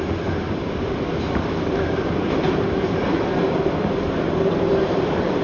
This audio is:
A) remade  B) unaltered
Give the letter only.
A